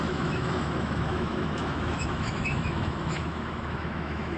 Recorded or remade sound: remade